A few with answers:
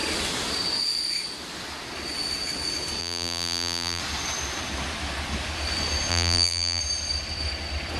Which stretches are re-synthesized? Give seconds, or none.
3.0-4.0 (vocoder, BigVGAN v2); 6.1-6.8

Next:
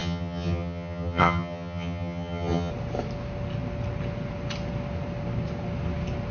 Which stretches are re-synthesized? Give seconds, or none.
0.0-2.7 (vocoder, HiFi-GAN)

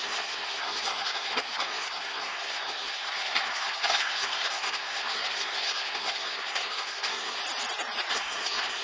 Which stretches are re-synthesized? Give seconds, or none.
0.0-7.4 (codec, SNAC); 8.1-8.8

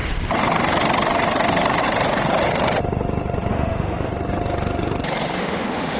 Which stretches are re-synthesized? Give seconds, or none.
3.5-4.1 (autoencoder, DAC-VAE); 5.4-6.0

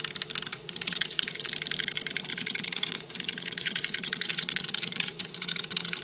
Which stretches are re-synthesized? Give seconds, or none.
0.5-1.5 (vocoder, Vocos); 2.3-6.0

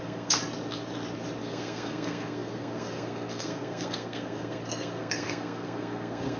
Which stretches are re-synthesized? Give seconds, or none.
0.0-0.4 (codec, SNAC); 1.4-6.4